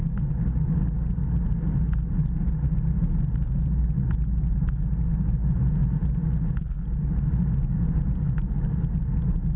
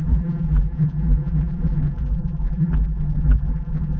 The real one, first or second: first